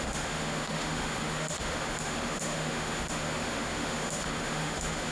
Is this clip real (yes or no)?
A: no